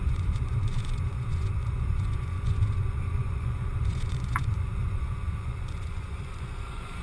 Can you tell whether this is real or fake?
fake